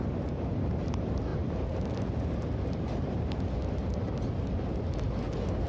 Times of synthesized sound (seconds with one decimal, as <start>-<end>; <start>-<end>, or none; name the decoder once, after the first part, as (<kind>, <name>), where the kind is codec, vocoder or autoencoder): 0.0-0.8 (vocoder, BigVGAN v2); 1.3-3.4; 3.8-4.4